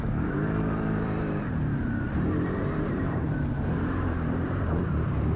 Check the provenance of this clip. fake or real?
fake